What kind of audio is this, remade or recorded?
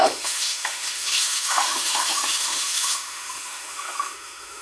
remade